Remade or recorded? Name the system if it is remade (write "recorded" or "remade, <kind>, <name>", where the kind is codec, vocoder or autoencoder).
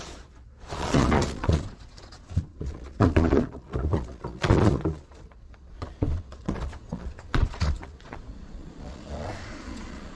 remade, vocoder, Vocos